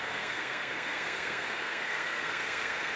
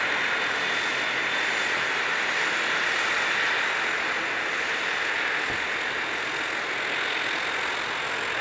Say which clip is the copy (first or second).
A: first